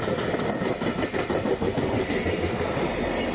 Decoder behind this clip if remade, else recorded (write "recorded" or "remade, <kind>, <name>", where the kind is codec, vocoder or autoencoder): recorded